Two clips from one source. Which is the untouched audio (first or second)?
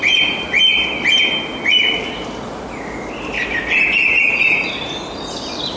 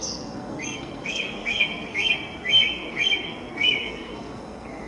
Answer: first